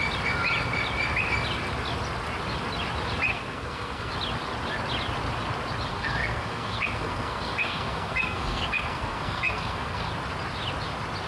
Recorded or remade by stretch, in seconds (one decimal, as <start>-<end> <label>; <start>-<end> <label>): 0.0-3.3 recorded; 3.3-4.1 remade; 4.1-5.9 recorded; 5.9-10.1 remade; 10.1-11.3 recorded